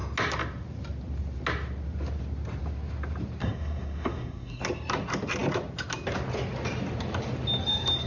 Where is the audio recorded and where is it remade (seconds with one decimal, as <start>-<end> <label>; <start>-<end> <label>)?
0.0-3.4 recorded; 3.4-4.6 remade; 4.6-8.1 recorded